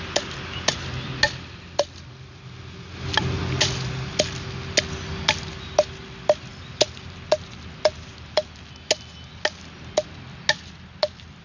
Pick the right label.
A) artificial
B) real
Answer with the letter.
B